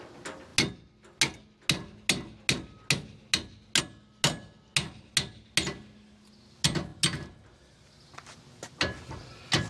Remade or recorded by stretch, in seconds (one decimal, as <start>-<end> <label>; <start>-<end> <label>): 0.0-9.7 recorded

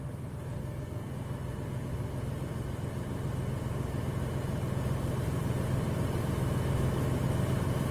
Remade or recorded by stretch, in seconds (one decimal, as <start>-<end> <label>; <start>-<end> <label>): 0.0-0.6 recorded; 0.6-1.1 remade; 1.1-7.9 recorded

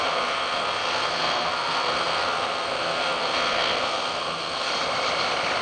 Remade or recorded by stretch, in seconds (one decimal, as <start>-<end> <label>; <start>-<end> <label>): 0.0-4.7 remade; 4.7-5.6 recorded

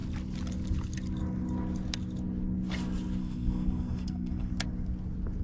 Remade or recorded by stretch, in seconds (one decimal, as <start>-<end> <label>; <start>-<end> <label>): 0.0-3.2 recorded; 3.2-4.5 remade; 4.5-5.4 recorded

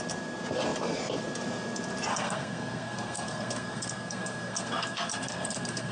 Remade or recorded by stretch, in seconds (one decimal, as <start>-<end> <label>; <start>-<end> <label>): 0.0-2.1 recorded; 2.1-5.9 remade